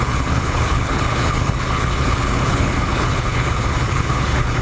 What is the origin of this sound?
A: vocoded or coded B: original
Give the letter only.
A